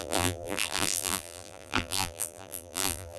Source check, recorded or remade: remade